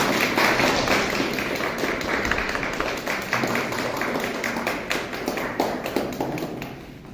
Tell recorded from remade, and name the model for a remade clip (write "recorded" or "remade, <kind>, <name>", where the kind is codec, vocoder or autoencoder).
recorded